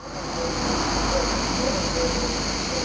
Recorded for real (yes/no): yes